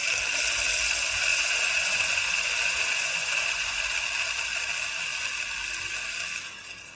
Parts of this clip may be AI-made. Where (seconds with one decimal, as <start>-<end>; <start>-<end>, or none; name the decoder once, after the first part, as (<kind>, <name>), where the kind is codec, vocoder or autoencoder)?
1.3-3.8 (vocoder, Vocos)